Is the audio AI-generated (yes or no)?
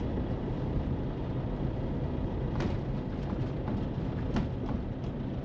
no